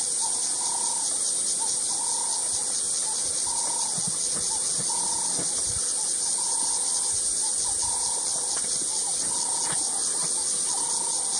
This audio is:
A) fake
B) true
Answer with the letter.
B